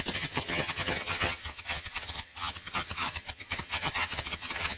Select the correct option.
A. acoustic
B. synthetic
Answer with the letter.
B